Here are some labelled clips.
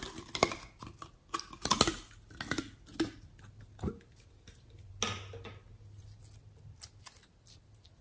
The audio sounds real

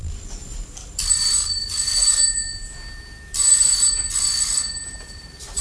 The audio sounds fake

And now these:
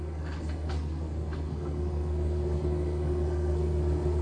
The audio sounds fake